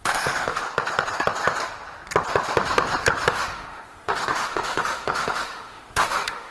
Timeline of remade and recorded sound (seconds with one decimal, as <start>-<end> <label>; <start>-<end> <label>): 0.0-0.6 remade; 0.6-3.3 recorded; 3.3-6.5 remade